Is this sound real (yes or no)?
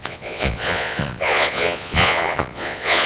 no